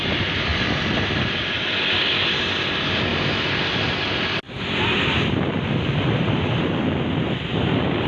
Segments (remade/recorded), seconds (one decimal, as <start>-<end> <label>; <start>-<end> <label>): 0.0-8.1 recorded